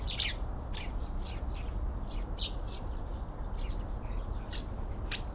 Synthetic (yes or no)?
no